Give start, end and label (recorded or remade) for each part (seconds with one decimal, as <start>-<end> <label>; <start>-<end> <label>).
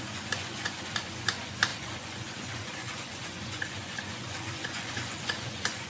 0.0-5.9 remade